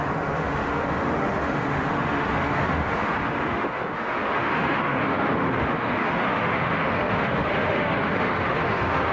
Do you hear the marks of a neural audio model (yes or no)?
yes